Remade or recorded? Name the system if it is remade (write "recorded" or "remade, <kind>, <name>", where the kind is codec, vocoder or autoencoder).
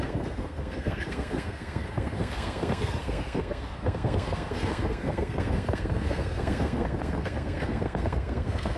remade, codec, SNAC